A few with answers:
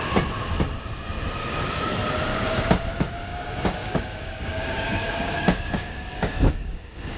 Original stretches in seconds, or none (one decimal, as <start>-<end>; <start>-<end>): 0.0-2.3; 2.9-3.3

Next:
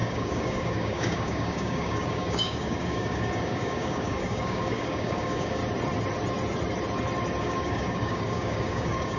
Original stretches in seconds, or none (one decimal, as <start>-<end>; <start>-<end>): 5.6-7.4

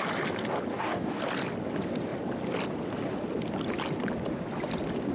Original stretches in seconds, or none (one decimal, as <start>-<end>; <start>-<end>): 0.0-0.7; 1.2-5.1

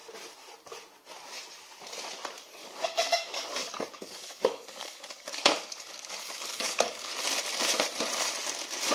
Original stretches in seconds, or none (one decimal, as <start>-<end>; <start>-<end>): 0.0-2.6; 7.1-8.9

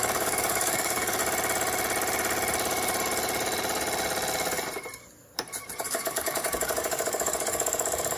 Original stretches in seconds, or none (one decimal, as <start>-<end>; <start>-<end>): 1.2-5.8

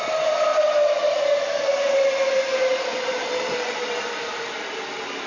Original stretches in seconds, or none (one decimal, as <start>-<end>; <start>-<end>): 0.0-5.3

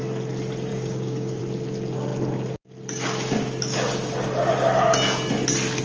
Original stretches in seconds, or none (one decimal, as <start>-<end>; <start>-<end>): 0.0-0.7; 1.4-5.8